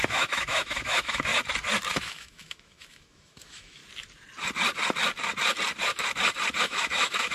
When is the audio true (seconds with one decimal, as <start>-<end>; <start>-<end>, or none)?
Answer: 1.3-2.0; 3.8-6.6